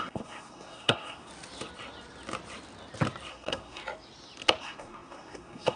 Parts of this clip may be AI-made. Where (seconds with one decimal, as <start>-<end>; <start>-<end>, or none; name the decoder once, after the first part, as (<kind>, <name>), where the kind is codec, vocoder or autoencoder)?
0.0-1.3 (codec, SNAC); 3.3-3.8; 4.6-5.8